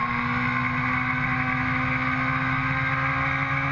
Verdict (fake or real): real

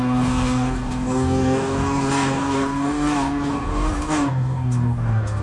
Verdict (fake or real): fake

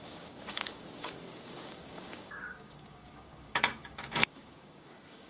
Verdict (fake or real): fake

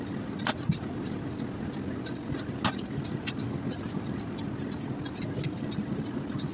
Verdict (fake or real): real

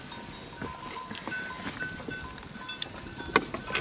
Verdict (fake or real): real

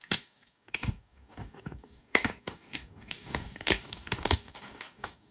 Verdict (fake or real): fake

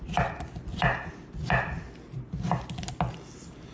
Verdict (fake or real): real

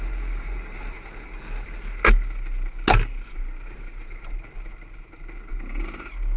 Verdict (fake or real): real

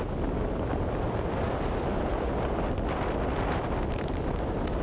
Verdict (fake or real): real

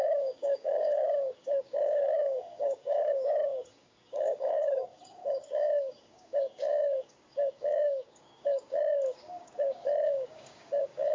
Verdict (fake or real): fake